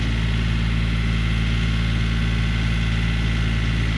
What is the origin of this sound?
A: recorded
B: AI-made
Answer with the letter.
A